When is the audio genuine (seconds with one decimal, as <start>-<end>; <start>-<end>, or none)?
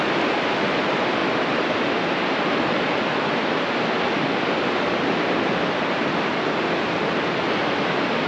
0.0-8.3